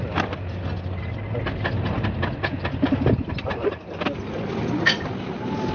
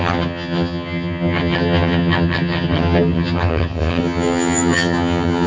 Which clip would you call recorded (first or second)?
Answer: first